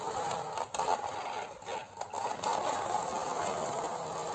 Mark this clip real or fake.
real